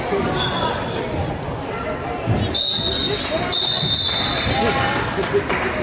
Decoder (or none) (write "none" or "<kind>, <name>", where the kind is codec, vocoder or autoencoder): none